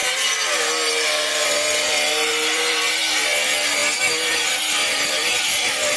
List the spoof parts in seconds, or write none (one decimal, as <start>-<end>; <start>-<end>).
0.0-6.0